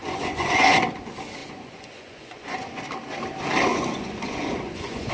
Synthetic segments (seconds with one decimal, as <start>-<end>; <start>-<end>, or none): 0.0-0.8; 1.4-2.8; 3.7-5.1